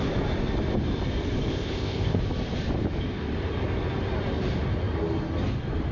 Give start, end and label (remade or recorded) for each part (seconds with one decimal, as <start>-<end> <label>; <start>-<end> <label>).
0.0-1.5 recorded; 1.5-2.2 remade; 2.2-5.9 recorded